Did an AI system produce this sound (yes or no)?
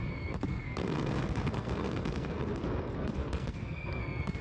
yes